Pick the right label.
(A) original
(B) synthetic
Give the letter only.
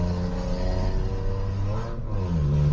A